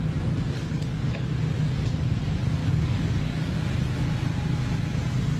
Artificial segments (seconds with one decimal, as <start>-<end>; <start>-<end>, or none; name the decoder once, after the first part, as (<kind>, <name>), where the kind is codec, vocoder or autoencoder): 0.7-1.3 (codec, DAC); 2.6-3.5